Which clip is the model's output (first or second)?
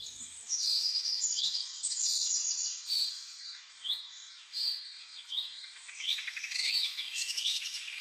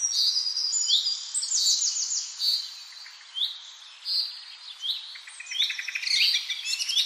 first